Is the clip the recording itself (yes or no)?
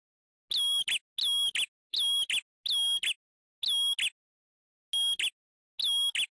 yes